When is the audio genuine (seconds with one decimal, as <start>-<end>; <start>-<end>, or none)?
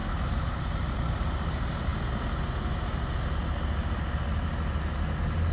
0.0-5.5